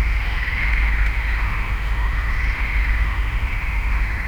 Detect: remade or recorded remade